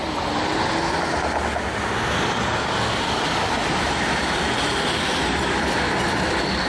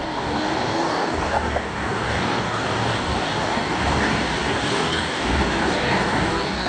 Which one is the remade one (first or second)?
second